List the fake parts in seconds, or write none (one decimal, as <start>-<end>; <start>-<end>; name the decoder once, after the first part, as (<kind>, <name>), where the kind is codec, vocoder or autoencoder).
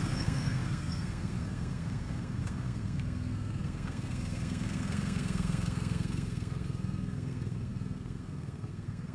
0.0-9.1 (codec, SNAC)